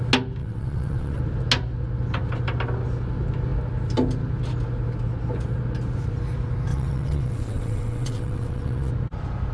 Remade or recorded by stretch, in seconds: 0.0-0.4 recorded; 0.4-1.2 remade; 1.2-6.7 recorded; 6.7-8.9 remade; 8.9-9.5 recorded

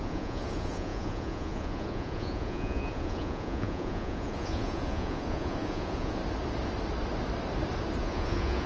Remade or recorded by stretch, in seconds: 0.0-6.2 remade; 6.2-8.0 recorded; 8.0-8.7 remade